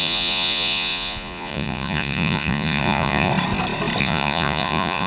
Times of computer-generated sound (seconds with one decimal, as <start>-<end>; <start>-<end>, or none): 0.0-3.3; 4.0-5.1